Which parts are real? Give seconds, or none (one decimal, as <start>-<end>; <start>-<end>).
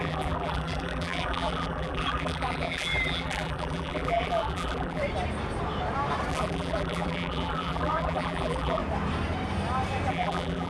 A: 5.0-6.3; 8.8-10.1